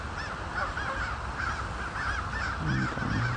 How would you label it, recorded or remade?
recorded